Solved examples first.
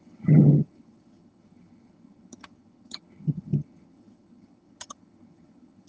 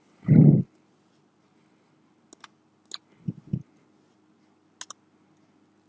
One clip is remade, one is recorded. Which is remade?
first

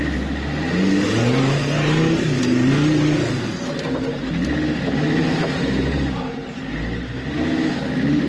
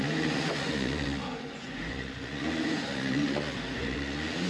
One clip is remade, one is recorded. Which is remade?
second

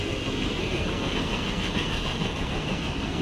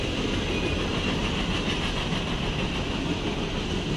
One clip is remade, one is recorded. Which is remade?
first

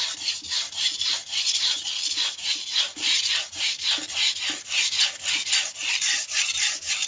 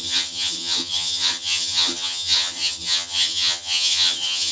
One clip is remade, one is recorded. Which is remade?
second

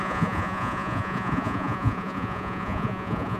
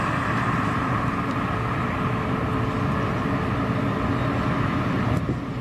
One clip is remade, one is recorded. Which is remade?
first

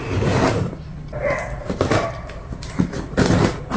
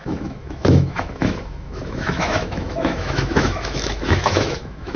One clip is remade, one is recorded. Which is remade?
second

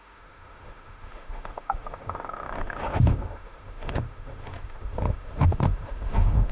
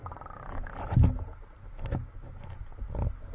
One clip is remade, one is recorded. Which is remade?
first